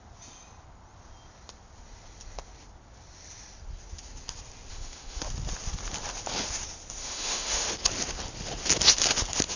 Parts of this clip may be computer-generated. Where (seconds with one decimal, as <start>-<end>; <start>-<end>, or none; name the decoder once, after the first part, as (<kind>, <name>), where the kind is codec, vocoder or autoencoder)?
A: 4.7-5.2 (autoencoder, DAC-VAE); 7.0-7.7